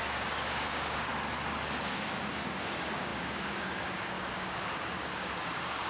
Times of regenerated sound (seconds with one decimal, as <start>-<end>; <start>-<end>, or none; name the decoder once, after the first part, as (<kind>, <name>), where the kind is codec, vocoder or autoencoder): 0.0-1.1 (codec, DAC); 1.8-5.9

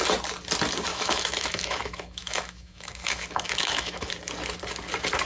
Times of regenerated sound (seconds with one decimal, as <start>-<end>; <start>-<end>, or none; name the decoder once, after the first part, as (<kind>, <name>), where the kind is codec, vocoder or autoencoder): 0.9-4.1 (autoencoder, DAC-VAE)

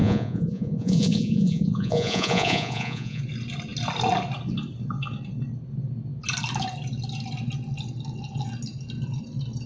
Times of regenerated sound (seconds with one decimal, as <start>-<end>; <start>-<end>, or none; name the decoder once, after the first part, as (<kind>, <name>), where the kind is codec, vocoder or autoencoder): 0.0-3.2 (vocoder, Vocos)

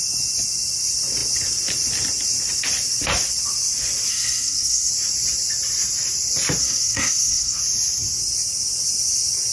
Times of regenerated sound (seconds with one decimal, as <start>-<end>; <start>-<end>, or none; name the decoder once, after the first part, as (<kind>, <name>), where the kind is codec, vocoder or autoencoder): 4.1-4.9 (codec, SNAC); 6.6-7.6